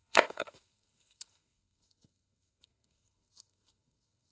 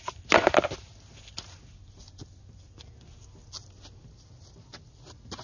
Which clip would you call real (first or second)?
second